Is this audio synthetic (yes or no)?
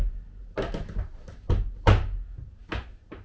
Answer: no